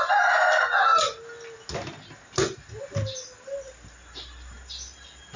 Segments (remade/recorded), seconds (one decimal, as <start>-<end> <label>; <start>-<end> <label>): 0.0-5.4 recorded